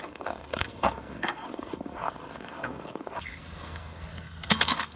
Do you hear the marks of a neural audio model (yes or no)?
yes